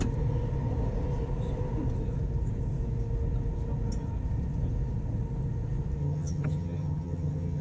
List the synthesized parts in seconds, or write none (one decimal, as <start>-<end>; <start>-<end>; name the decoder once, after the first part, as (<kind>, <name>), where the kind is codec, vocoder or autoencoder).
6.0-7.6 (vocoder, HiFi-GAN)